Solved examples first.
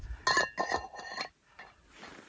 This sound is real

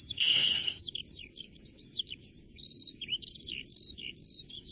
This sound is fake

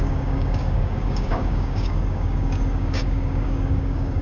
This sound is fake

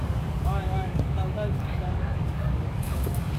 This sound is fake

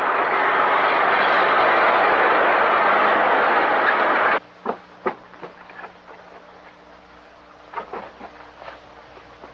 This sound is real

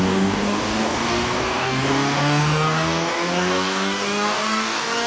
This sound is fake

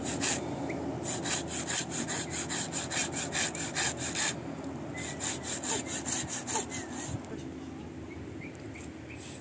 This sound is real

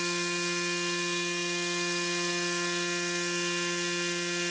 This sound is real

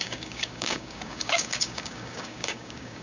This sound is fake